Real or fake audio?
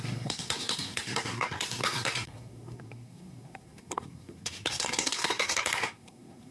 fake